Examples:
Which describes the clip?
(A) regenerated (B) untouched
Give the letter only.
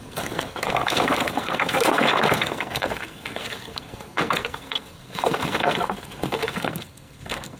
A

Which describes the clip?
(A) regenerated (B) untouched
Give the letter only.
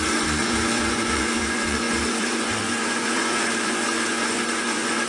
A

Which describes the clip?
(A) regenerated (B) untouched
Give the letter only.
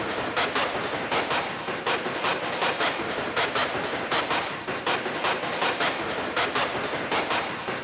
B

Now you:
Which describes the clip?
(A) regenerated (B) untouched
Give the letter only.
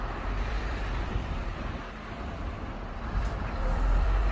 A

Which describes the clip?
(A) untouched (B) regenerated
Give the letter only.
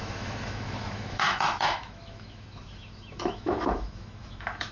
B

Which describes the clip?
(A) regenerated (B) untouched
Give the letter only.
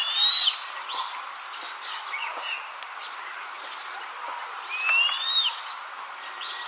B